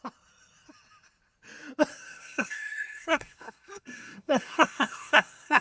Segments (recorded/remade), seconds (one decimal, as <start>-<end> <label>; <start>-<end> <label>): 0.0-1.9 recorded; 1.9-5.6 remade